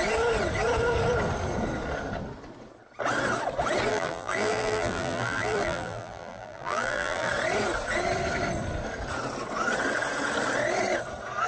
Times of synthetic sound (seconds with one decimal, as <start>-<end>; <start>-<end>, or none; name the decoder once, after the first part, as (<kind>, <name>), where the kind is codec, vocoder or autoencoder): 3.9-7.3 (vocoder, BigVGAN v2)